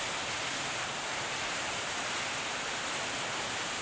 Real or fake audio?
real